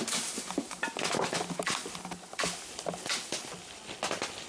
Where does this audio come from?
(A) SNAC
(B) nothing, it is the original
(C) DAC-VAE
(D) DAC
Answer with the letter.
B